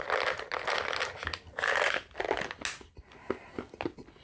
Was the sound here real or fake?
real